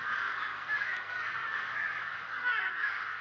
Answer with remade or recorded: remade